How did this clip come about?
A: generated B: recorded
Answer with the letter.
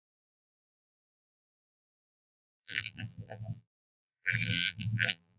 A